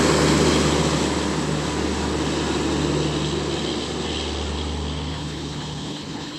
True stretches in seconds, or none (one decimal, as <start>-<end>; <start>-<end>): 0.0-5.1